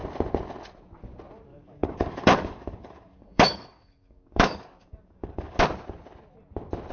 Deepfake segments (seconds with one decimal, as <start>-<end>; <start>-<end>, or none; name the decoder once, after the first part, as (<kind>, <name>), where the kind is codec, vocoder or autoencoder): 1.5-5.6 (codec, DAC)

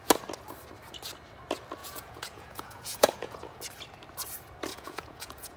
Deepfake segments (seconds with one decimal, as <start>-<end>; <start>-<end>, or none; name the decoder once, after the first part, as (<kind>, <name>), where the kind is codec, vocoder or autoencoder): 1.8-3.6 (vocoder, Vocos); 4.7-5.6

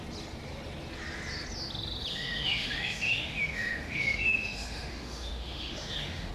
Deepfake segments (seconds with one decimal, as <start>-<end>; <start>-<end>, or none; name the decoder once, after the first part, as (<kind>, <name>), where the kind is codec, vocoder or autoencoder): 2.1-6.3 (autoencoder, DAC-VAE)

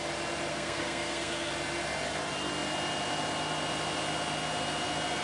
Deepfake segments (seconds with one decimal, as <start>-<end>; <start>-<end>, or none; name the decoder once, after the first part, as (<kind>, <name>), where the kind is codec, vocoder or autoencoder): 0.5-1.5 (codec, SNAC)

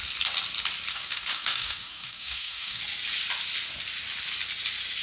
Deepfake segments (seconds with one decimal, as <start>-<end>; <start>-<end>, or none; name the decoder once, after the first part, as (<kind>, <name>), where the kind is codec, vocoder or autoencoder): 0.9-2.8 (codec, DAC)

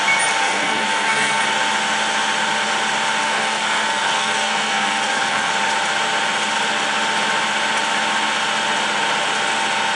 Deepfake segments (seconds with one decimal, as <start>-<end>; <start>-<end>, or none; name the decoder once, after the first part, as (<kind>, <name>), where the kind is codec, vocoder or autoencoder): 0.4-1.4 (codec, SNAC); 3.2-5.5